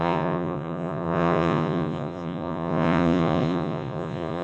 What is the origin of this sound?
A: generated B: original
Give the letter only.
A